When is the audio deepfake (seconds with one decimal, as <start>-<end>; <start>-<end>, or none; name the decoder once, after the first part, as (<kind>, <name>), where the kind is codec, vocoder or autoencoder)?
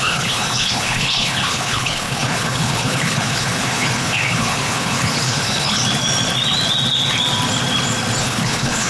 0.0-5.8 (codec, HILCodec); 8.2-8.9